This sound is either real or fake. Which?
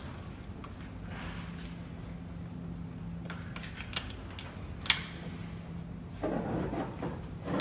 real